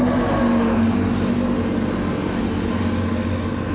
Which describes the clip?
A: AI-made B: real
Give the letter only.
B